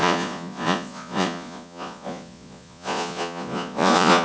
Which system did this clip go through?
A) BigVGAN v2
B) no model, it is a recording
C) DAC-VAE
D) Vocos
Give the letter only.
D